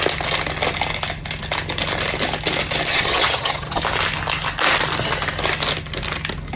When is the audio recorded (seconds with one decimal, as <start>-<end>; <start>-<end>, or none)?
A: 0.0-2.9; 3.8-6.6